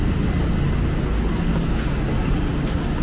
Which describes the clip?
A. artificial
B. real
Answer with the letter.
B